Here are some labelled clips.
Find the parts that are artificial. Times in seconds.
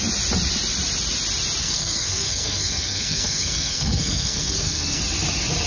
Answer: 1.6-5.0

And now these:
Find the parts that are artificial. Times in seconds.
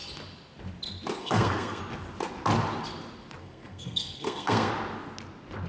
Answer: 1.2-1.8; 3.4-4.7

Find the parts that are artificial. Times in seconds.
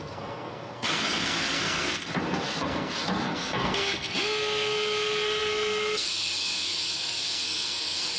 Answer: 0.0-8.2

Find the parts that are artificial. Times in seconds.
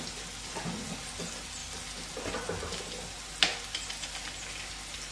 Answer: none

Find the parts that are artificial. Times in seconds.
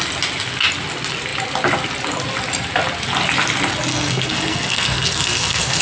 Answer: 3.9-5.8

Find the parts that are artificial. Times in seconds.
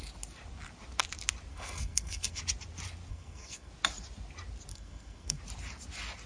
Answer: 1.5-2.4; 3.1-3.7; 4.7-5.4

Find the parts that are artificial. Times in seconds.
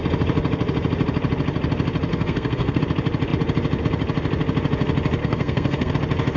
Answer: 2.1-2.8; 5.2-5.9